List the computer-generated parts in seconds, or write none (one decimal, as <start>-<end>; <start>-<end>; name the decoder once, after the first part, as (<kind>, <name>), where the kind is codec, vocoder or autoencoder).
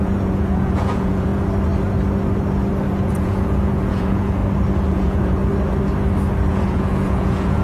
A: 0.0-1.3 (vocoder, Vocos); 3.0-4.4; 4.9-5.4; 6.5-7.6